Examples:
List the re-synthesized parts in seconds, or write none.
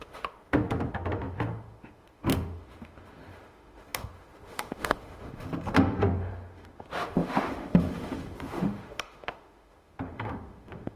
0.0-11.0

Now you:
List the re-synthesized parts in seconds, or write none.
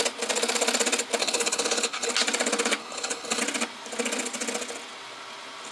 1.2-2.1; 2.8-3.4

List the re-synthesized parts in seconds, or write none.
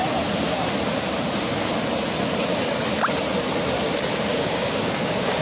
4.3-5.4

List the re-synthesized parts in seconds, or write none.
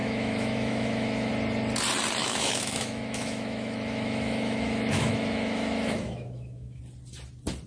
0.0-1.3; 2.2-6.8